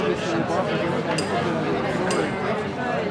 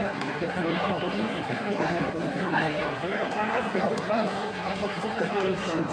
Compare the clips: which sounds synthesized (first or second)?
second